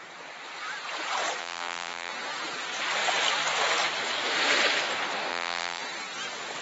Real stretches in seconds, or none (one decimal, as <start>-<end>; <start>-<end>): 0.0-1.4; 2.1-5.3; 5.8-6.6